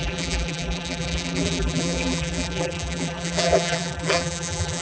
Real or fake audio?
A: fake